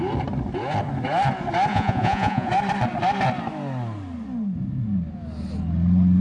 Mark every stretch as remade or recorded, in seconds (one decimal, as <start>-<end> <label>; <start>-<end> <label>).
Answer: 0.0-1.7 recorded; 1.7-2.5 remade; 2.5-6.2 recorded